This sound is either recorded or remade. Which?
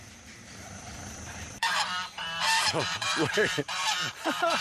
remade